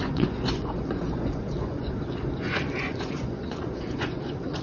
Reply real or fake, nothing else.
fake